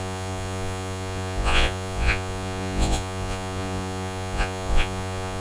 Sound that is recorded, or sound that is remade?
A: remade